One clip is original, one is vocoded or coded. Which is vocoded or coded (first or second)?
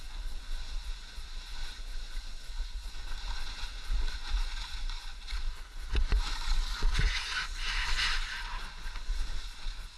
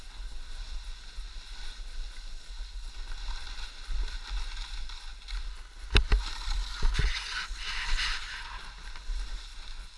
first